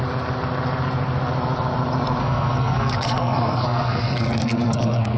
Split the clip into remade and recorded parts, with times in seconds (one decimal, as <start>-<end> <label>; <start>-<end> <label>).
0.0-2.2 recorded; 2.2-5.2 remade